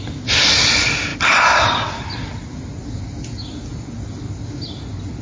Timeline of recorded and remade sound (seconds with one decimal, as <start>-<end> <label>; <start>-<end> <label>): 0.0-5.2 recorded